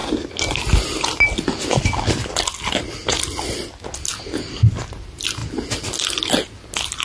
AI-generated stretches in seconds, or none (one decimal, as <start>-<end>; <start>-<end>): none